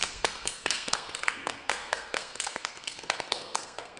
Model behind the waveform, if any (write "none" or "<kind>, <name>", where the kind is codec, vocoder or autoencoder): codec, SNAC